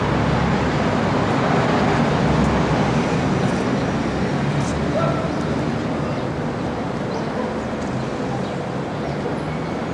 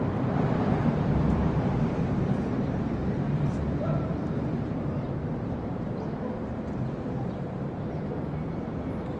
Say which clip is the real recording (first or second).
first